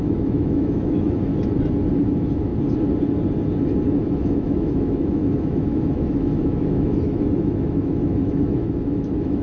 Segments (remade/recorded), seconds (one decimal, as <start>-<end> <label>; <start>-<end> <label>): 0.0-1.3 remade; 1.3-2.0 recorded; 2.0-2.5 remade; 2.5-4.0 recorded; 4.0-9.4 remade